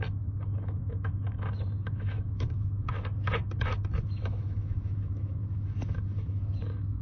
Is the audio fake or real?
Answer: fake